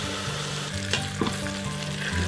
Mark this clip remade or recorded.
recorded